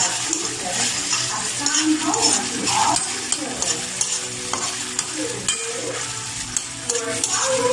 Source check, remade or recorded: recorded